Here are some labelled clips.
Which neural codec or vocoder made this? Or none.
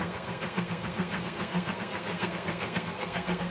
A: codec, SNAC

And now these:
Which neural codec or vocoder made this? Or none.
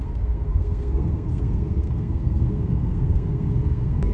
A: codec, SNAC